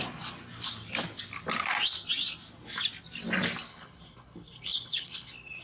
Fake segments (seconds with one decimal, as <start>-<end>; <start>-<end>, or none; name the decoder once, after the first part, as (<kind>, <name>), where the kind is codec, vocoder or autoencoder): 3.7-5.6 (codec, HILCodec)